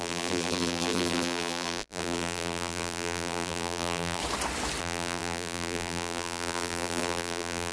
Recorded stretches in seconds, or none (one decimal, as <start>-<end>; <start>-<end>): 4.2-4.8